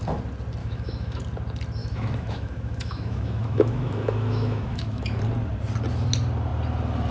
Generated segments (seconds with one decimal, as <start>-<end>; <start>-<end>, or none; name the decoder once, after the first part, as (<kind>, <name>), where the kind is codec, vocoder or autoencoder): 0.6-1.2 (autoencoder, DAC-VAE); 1.8-5.2